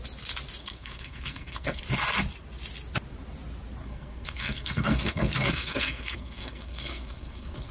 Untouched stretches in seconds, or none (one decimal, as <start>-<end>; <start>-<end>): 0.0-0.6; 1.8-3.8